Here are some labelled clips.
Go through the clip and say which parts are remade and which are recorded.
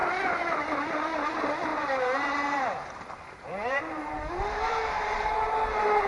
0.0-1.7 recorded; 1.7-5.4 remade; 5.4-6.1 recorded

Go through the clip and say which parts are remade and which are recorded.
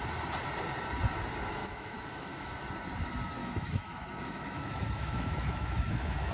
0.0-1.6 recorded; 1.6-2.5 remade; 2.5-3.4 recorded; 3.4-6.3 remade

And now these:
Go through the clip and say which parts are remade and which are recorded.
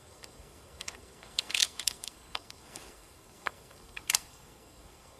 0.0-5.2 remade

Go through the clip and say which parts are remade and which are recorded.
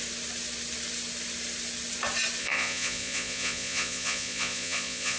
0.0-2.4 recorded; 2.4-5.2 remade